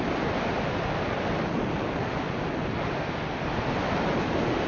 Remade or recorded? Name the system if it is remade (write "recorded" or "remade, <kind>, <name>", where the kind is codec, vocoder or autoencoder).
recorded